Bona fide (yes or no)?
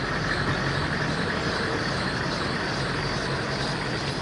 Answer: yes